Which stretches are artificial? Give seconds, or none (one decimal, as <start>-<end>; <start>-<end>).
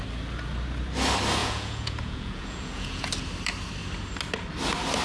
1.4-3.1